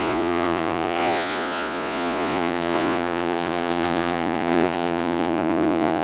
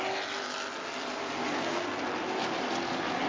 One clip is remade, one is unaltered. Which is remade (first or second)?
first